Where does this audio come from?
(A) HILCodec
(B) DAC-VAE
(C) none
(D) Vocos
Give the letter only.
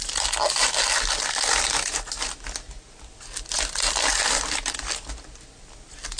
C